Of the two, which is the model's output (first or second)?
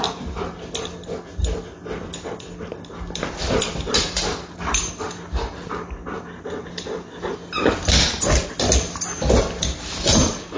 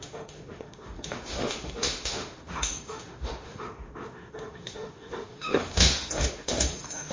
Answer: second